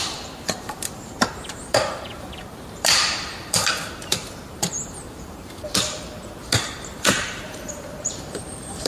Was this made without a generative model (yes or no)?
no